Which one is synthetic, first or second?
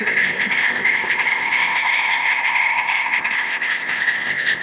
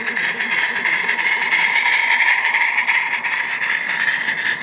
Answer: first